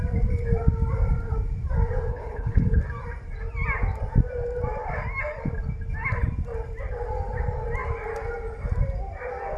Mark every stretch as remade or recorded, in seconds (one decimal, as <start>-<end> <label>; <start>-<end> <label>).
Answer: 0.0-2.1 recorded; 2.1-2.8 remade; 2.8-9.6 recorded